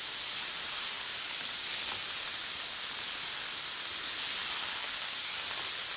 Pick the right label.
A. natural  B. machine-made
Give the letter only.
A